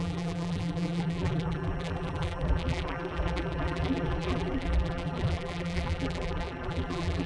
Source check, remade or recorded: remade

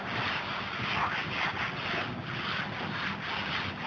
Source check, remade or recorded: recorded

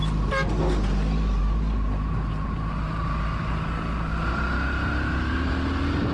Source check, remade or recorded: recorded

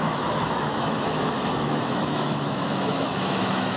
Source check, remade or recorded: remade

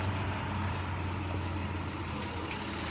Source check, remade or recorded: recorded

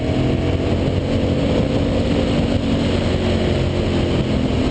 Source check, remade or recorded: recorded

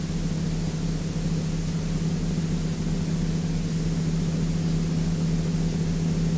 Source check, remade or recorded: recorded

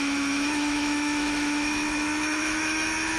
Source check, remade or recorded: remade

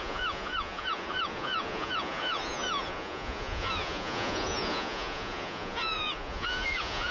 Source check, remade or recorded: remade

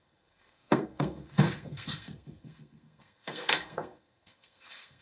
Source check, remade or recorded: remade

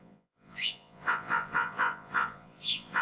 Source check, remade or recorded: remade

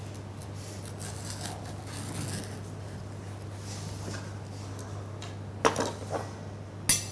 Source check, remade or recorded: recorded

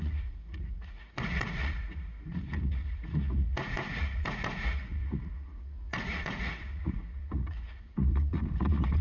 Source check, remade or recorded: remade